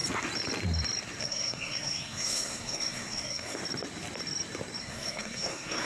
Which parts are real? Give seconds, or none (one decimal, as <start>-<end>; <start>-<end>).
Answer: 0.0-1.2; 3.6-4.8